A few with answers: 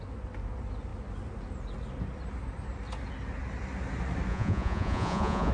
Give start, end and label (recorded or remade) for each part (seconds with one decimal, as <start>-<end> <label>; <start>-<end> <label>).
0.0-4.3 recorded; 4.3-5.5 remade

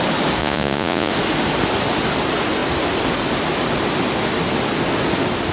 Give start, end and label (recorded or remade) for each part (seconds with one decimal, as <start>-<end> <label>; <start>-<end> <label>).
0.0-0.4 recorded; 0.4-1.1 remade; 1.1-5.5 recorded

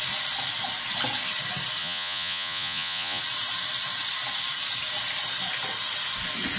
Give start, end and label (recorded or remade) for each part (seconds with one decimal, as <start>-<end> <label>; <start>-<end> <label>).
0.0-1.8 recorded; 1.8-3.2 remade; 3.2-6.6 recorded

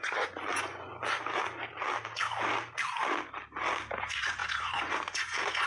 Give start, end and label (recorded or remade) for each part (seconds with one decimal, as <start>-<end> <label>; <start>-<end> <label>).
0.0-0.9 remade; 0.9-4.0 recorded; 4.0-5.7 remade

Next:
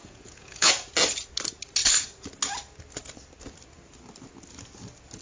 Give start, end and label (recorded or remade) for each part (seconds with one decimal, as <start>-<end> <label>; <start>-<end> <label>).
0.0-0.7 remade; 0.7-5.2 recorded